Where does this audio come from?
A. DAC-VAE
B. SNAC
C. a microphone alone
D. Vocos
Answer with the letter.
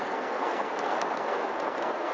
B